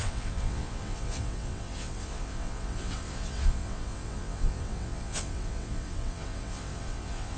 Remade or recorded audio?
remade